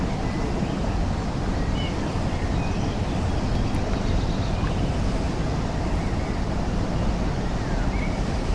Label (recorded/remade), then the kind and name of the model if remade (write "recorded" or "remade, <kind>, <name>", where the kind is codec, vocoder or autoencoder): recorded